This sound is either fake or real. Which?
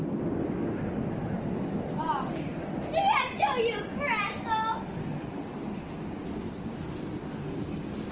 real